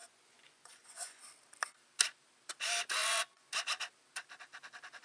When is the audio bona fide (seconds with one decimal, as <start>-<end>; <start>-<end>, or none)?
1.2-3.0; 3.5-5.0